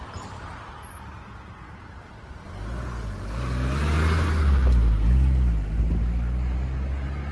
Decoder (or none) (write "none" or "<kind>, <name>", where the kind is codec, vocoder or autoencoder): none